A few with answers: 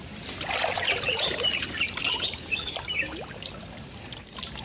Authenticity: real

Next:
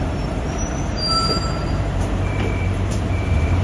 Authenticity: fake